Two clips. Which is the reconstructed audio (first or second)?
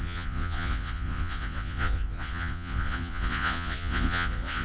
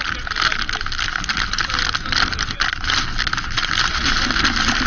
first